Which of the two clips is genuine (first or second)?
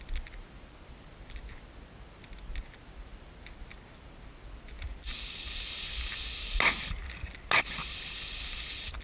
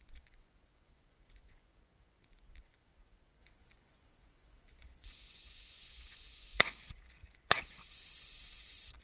first